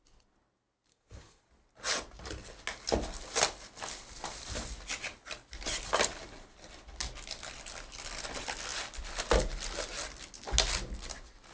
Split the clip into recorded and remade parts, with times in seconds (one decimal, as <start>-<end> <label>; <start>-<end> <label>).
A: 0.0-0.9 recorded; 0.9-1.4 remade; 1.4-11.5 recorded